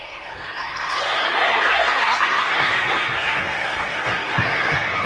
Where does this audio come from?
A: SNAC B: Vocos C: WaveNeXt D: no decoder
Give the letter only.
A